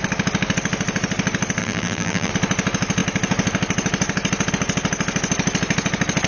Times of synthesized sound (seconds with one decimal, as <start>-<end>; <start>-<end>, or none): 1.6-2.3